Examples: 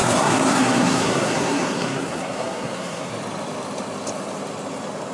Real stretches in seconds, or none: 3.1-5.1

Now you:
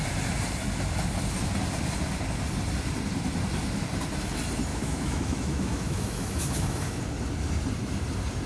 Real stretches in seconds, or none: 0.0-4.7; 7.0-8.5

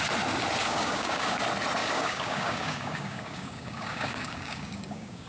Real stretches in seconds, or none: 0.0-0.6; 1.4-1.8